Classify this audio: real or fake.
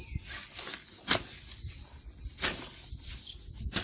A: real